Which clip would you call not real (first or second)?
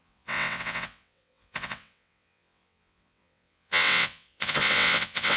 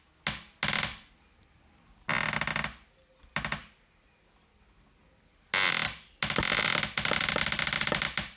first